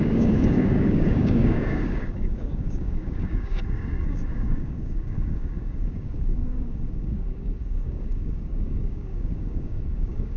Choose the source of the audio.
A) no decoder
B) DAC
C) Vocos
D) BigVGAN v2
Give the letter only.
B